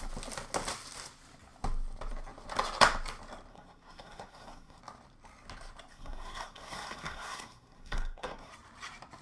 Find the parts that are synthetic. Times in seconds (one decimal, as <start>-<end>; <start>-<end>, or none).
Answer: 3.5-4.8; 5.9-8.5